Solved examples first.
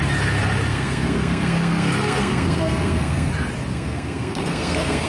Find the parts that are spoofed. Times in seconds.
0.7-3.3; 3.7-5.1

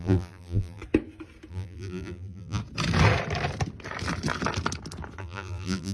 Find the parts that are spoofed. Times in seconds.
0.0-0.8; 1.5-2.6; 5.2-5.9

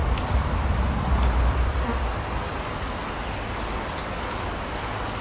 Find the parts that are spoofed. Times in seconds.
none

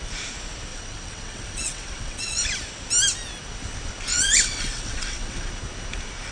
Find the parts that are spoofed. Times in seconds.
0.7-2.4; 4.1-5.5

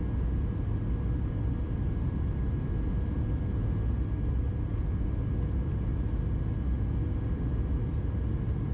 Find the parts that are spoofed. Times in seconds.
none